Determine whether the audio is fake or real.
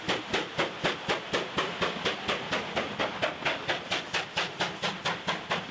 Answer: real